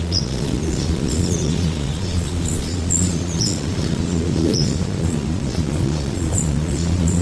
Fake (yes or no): yes